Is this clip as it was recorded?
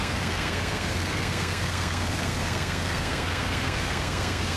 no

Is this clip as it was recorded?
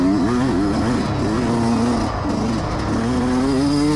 yes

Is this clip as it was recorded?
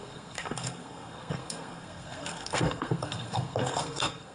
no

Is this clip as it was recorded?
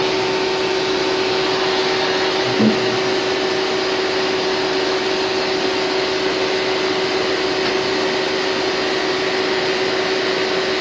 yes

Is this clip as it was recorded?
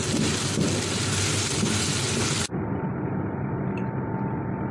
yes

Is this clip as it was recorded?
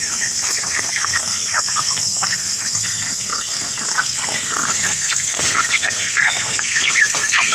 no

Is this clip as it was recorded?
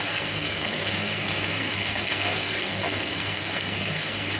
no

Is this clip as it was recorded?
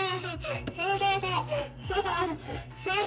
no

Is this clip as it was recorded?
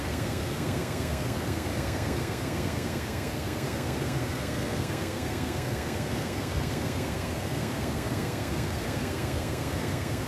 no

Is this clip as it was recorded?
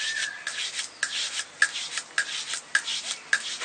yes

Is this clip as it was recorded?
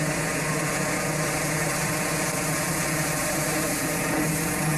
yes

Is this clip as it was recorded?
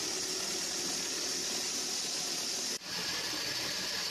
yes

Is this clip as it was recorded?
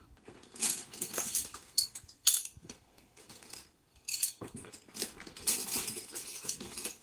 no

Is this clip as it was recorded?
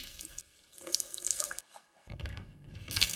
no